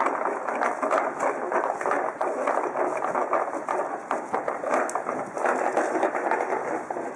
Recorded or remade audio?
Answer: recorded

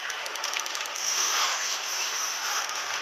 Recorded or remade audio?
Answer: remade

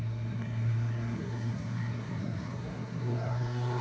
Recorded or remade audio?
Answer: remade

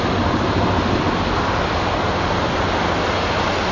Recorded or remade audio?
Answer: recorded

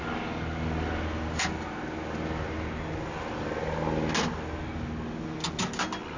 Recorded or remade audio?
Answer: recorded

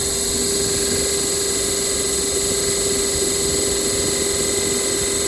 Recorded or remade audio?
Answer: recorded